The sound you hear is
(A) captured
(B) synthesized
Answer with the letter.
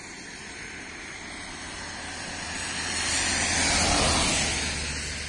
A